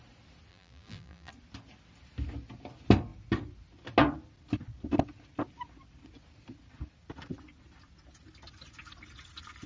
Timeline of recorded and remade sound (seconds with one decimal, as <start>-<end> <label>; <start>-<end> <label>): 0.0-0.5 recorded; 0.5-1.3 remade; 1.3-9.7 recorded